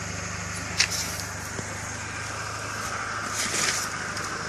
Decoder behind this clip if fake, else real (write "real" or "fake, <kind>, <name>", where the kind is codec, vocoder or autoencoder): real